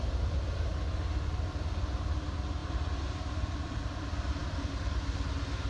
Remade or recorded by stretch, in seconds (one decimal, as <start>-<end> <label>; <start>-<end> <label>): 0.0-2.6 recorded; 2.6-3.8 remade; 3.8-4.4 recorded; 4.4-4.9 remade; 4.9-5.7 recorded